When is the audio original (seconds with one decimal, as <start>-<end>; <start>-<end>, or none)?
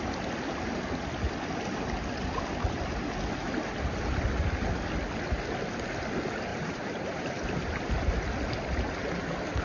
0.0-6.5; 7.2-9.6